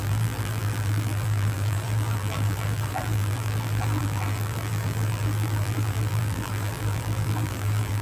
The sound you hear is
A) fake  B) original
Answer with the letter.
A